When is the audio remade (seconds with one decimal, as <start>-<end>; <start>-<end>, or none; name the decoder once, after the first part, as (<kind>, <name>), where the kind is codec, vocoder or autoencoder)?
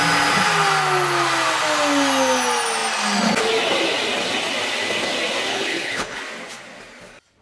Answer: 5.5-6.2 (codec, HILCodec)